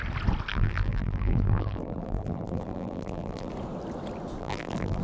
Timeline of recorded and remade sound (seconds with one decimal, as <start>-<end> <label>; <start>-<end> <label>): 0.0-0.5 recorded; 0.5-3.5 remade; 3.5-4.4 recorded; 4.4-5.0 remade